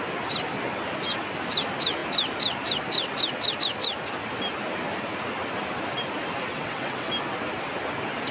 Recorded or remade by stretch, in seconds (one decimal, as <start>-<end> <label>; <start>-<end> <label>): 0.0-6.5 recorded; 6.5-7.1 remade; 7.1-8.3 recorded